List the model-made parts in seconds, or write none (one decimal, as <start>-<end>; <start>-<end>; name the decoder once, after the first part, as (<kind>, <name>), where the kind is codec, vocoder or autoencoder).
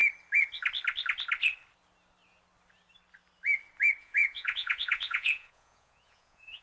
4.0-6.6 (vocoder, Vocos)